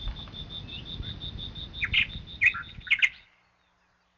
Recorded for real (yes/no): yes